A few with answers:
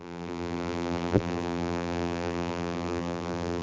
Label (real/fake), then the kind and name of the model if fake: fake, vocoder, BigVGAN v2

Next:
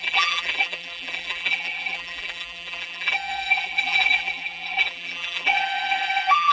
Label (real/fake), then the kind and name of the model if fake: fake, vocoder, BigVGAN v2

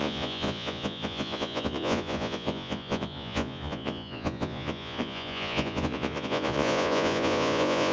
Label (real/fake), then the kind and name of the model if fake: fake, vocoder, Vocos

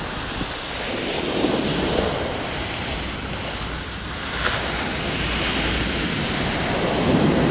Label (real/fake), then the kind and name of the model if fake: real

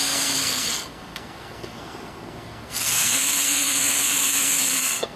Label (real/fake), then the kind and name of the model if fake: fake, codec, SNAC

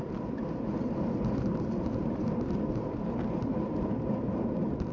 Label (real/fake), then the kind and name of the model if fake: real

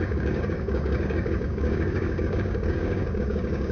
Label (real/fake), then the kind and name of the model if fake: fake, codec, DAC